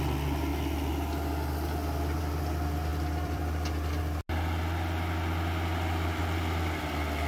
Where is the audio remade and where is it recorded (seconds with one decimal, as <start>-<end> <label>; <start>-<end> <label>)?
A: 0.0-2.9 recorded; 2.9-4.0 remade; 4.0-7.3 recorded